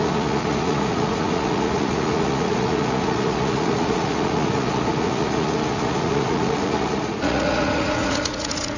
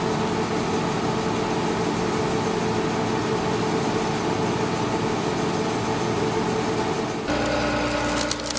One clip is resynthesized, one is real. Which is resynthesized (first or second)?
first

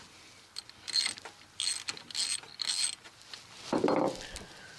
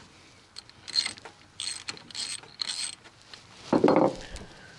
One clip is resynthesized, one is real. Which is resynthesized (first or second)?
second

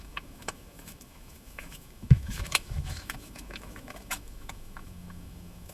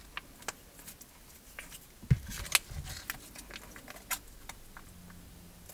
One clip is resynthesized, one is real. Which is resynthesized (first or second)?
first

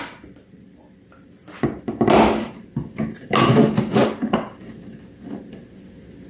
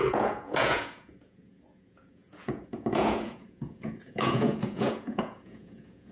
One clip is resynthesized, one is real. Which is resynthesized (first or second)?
second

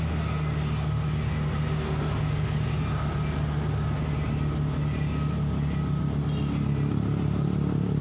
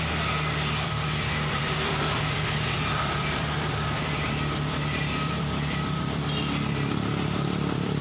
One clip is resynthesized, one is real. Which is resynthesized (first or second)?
second